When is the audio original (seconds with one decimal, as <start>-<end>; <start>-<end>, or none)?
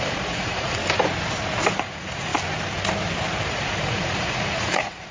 0.8-1.8; 2.3-3.5